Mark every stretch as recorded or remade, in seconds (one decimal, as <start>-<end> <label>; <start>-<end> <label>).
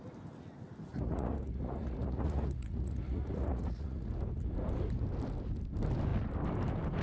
0.0-0.9 recorded; 0.9-4.1 remade; 4.1-7.0 recorded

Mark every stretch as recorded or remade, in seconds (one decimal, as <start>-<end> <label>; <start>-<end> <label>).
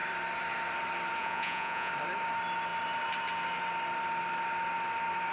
0.0-1.2 recorded; 1.2-1.9 remade; 1.9-5.3 recorded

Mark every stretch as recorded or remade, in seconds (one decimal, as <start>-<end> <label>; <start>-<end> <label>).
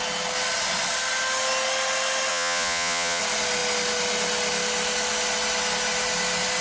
0.0-2.3 recorded; 2.3-3.2 remade; 3.2-6.6 recorded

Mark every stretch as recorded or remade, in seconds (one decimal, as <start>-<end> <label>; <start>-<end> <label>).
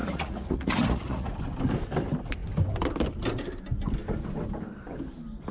0.0-1.3 remade; 1.3-5.5 recorded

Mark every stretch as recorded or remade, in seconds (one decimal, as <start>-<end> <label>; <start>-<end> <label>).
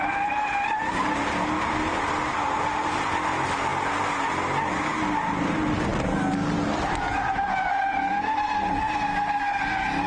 0.0-10.1 recorded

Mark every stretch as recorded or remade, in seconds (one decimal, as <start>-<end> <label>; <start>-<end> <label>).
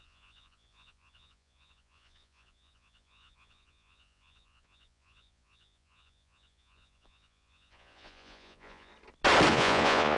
0.0-8.9 remade; 8.9-9.5 recorded; 9.5-10.2 remade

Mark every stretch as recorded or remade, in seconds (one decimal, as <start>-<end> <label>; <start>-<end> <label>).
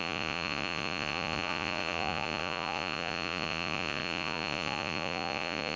0.0-5.8 remade